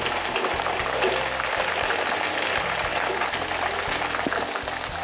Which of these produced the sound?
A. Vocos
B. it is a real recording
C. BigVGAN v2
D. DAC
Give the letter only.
B